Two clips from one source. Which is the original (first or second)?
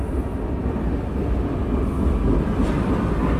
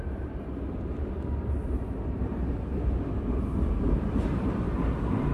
first